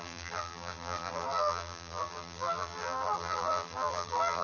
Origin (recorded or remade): remade